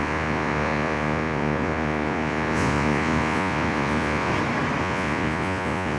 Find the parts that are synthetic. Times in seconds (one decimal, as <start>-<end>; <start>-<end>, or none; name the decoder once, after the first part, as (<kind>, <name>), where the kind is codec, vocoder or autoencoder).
0.0-4.3 (vocoder, Vocos); 4.8-6.0